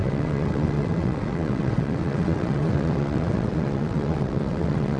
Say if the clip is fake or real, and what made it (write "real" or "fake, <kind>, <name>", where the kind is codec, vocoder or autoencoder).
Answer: fake, vocoder, WaveNeXt